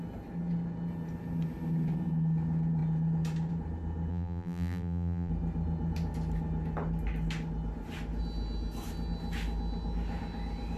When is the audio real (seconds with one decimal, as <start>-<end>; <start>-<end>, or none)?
0.0-4.1; 5.3-10.8